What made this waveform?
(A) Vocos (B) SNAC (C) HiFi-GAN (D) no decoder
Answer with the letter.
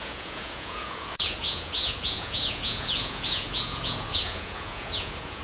A